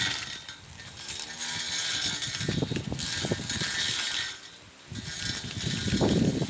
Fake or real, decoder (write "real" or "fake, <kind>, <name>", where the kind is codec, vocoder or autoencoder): real